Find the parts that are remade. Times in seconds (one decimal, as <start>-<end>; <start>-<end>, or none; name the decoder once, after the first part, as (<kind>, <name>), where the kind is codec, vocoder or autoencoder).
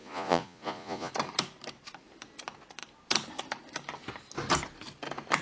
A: 0.0-1.1 (vocoder, Vocos)